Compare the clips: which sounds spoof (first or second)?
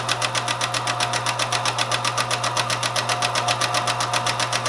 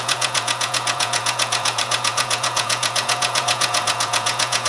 second